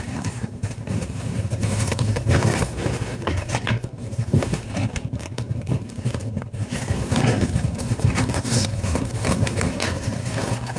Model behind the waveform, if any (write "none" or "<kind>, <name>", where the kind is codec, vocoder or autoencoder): codec, SNAC